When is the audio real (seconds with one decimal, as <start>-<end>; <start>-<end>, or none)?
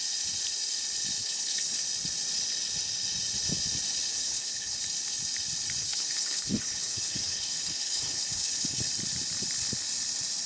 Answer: 0.0-1.2; 1.8-4.1; 4.8-5.8; 8.9-10.5